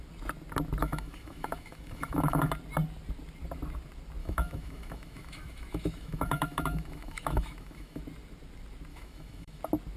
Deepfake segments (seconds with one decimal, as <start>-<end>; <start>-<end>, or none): 0.8-2.5; 4.2-8.0; 8.9-9.6